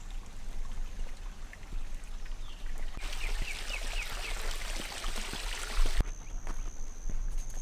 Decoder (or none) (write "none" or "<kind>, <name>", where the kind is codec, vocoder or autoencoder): none